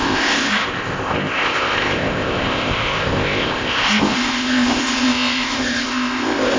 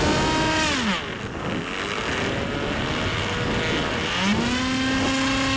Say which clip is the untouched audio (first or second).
second